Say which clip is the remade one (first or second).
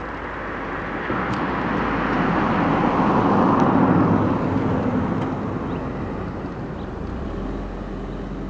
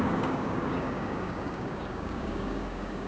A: second